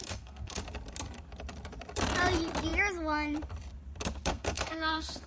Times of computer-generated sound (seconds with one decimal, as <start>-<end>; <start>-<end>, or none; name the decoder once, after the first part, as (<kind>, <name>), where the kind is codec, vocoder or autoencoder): 0.0-0.6 (codec, SNAC); 4.3-5.3